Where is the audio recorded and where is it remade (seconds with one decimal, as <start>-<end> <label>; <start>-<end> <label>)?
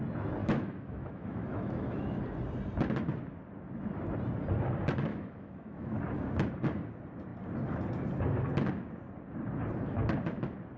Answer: 0.0-0.4 recorded; 0.4-2.2 remade; 2.2-5.1 recorded; 5.1-6.0 remade; 6.0-10.8 recorded